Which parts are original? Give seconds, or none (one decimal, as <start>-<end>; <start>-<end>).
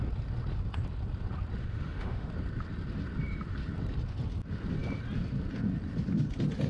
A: 0.0-1.6; 2.3-6.7